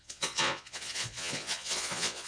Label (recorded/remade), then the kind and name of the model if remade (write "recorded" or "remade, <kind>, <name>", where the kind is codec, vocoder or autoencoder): remade, vocoder, Vocos